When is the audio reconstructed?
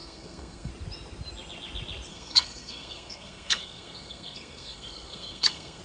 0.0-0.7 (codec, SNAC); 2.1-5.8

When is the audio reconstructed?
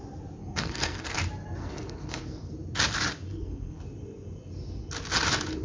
0.4-1.2 (codec, SNAC); 1.6-2.5; 3.3-3.8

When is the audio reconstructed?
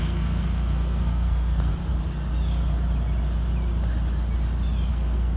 0.0-1.7 (codec, SNAC); 4.9-5.4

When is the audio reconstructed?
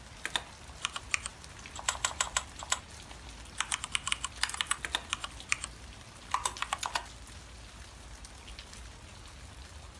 none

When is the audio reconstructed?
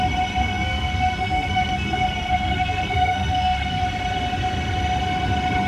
0.4-3.8 (codec, SNAC)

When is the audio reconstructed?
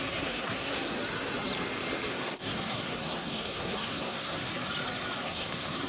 0.0-1.0 (codec, SNAC); 2.1-4.5; 5.2-5.9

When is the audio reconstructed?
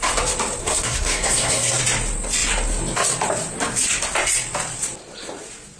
0.6-1.8 (codec, SNAC)